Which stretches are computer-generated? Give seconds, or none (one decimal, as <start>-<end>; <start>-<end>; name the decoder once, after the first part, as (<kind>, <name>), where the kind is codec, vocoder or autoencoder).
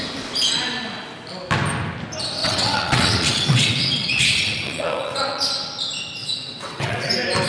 2.4-5.4 (vocoder, WaveNeXt); 6.2-7.1